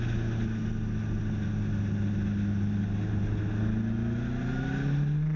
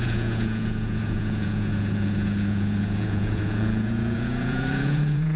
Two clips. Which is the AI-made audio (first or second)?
second